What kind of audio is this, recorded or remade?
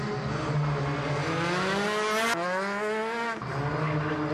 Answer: recorded